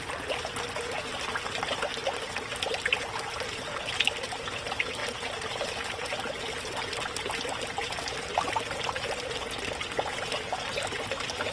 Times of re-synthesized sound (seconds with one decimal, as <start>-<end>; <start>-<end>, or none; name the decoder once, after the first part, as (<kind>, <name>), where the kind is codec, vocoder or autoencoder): none